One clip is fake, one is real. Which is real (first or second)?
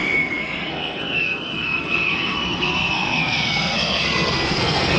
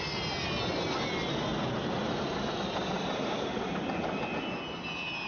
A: second